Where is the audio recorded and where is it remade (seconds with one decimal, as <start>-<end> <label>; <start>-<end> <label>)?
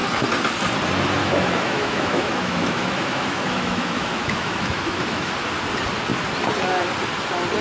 0.0-1.2 recorded; 1.2-5.3 remade; 5.3-7.6 recorded